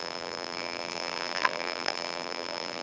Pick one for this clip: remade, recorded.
remade